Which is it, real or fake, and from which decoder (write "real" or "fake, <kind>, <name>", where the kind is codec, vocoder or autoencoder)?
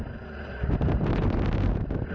real